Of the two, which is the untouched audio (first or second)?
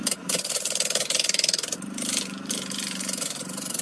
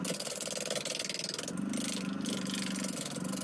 second